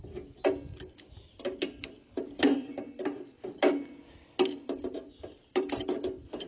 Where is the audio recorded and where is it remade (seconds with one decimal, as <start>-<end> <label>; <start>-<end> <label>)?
0.0-6.5 recorded